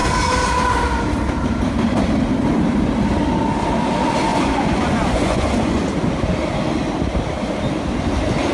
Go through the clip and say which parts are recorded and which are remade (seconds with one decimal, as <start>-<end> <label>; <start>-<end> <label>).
0.0-4.3 recorded; 4.3-5.8 remade; 5.8-8.5 recorded